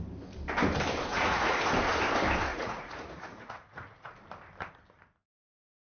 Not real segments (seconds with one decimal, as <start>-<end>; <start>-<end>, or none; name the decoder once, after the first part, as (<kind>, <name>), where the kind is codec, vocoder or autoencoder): 1.1-1.6 (vocoder, Vocos); 2.5-4.1